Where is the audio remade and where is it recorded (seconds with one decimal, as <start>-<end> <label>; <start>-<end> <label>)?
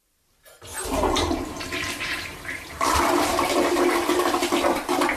0.0-0.7 recorded; 0.7-3.0 remade; 3.0-5.2 recorded